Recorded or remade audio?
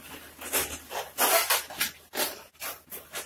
recorded